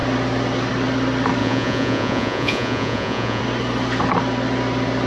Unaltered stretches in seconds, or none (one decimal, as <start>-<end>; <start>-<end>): 0.0-1.4; 3.4-5.1